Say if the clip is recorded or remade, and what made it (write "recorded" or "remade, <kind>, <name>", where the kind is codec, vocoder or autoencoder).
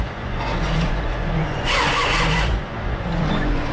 remade, vocoder, Vocos